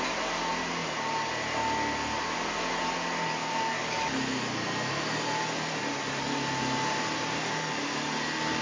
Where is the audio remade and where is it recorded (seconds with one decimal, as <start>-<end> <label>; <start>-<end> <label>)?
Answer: 0.0-3.4 recorded; 3.4-6.0 remade; 6.0-8.6 recorded